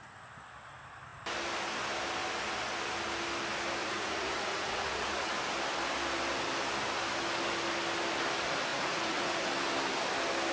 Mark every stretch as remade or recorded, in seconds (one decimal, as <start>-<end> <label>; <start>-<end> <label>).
0.0-3.8 recorded; 3.8-5.3 remade; 5.3-8.7 recorded; 8.7-9.5 remade; 9.5-10.5 recorded